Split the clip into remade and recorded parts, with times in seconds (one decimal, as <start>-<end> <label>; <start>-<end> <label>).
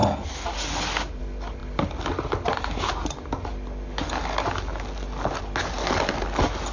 0.0-6.7 recorded